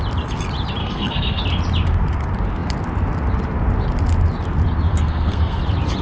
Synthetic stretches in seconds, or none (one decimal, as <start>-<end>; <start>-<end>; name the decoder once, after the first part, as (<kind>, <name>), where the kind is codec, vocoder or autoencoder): 0.8-1.4 (codec, SNAC); 4.9-5.6